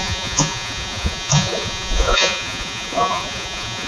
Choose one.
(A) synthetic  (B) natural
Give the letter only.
A